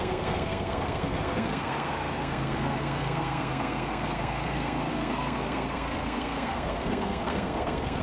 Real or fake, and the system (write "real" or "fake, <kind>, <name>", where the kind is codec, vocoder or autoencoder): fake, codec, SNAC